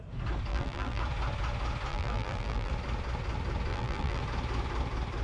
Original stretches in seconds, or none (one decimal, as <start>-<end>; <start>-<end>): 0.0-0.5; 1.0-1.9; 2.7-3.7; 4.2-5.2